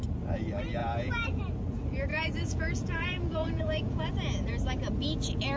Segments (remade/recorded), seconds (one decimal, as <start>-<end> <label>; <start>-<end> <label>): 0.0-0.8 recorded; 0.8-1.4 remade; 1.4-2.1 recorded; 2.1-4.1 remade; 4.1-5.6 recorded

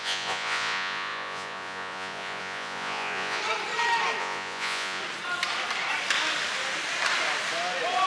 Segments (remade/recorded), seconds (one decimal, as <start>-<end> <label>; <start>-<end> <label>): 0.0-3.4 remade; 3.4-4.2 recorded; 4.2-5.0 remade; 5.0-8.1 recorded